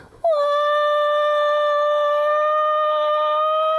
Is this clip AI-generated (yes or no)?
yes